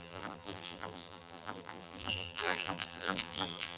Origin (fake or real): fake